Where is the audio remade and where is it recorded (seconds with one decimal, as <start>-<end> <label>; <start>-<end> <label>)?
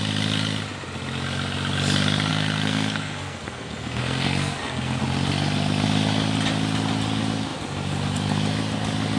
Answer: 0.0-2.3 recorded; 2.3-5.0 remade; 5.0-9.2 recorded